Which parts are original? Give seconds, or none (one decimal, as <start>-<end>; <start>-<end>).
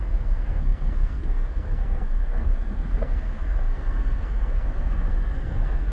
none